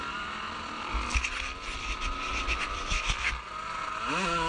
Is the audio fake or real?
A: real